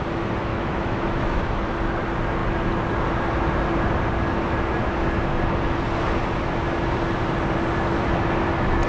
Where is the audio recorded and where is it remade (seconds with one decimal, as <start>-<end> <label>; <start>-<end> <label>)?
0.0-0.4 recorded; 0.4-1.4 remade; 1.4-8.9 recorded